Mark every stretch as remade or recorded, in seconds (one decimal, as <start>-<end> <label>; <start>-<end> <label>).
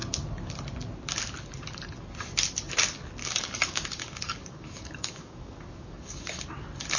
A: 0.0-3.2 recorded; 3.2-6.3 remade; 6.3-7.0 recorded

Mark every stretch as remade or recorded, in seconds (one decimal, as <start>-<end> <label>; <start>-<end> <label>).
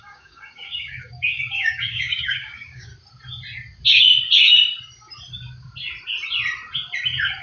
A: 0.0-2.9 remade; 2.9-7.4 recorded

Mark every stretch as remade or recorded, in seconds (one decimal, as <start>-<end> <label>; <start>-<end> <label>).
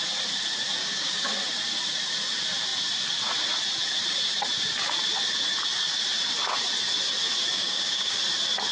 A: 0.0-0.8 recorded; 0.8-1.3 remade; 1.3-7.5 recorded; 7.5-8.2 remade; 8.2-8.7 recorded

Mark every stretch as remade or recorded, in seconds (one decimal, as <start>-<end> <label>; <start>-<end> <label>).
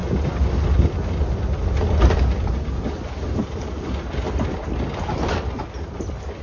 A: 0.0-6.4 recorded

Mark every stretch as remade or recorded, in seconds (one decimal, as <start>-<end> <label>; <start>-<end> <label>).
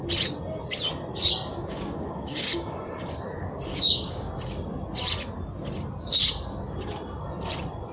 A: 0.0-1.5 recorded; 1.5-2.8 remade; 2.8-3.7 recorded; 3.7-4.3 remade; 4.3-7.9 recorded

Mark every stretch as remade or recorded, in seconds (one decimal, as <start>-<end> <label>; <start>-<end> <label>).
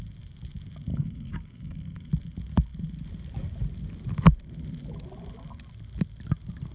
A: 0.0-0.9 recorded; 0.9-2.1 remade; 2.1-6.7 recorded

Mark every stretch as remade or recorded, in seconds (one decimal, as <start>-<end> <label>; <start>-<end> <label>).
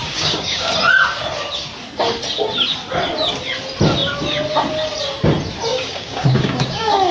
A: 0.0-0.7 remade; 0.7-5.7 recorded; 5.7-7.1 remade